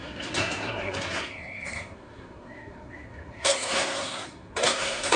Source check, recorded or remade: remade